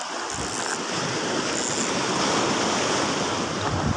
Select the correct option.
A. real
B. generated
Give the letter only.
A